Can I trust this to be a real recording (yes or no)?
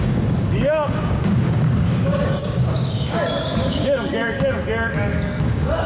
no